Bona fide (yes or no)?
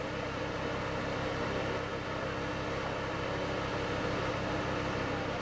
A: yes